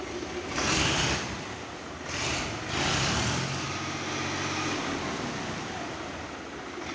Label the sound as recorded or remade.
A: recorded